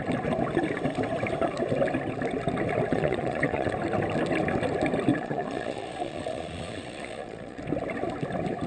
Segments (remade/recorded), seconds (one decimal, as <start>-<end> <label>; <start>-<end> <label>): 0.0-2.9 recorded; 2.9-3.7 remade; 3.7-5.1 recorded; 5.1-7.6 remade; 7.6-8.7 recorded